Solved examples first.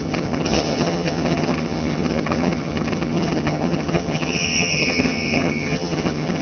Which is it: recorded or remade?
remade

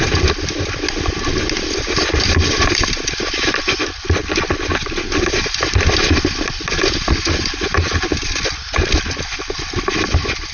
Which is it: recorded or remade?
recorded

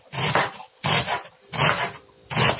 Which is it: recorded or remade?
recorded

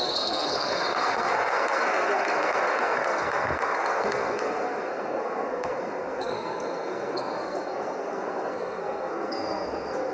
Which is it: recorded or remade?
remade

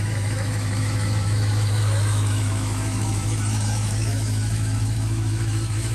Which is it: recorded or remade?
remade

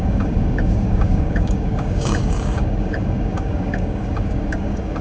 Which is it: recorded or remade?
remade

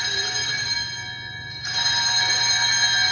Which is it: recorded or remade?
recorded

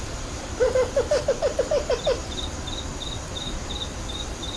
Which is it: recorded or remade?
remade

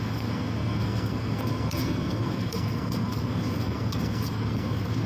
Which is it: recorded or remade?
remade